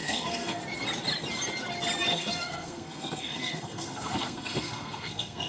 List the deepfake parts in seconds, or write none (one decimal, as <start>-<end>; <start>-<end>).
0.0-0.6; 2.1-5.5